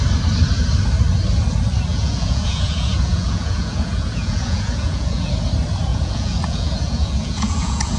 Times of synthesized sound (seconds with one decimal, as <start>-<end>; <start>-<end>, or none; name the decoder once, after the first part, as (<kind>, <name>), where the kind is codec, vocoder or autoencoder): 1.9-5.3 (vocoder, Vocos); 5.9-8.0